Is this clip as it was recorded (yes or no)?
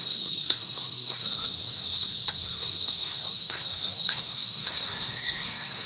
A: no